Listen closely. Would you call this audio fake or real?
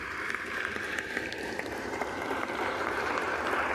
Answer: fake